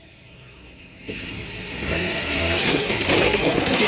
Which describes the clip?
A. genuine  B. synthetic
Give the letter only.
B